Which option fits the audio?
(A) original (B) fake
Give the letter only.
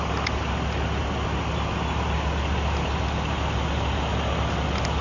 A